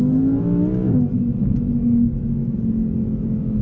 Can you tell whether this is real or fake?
real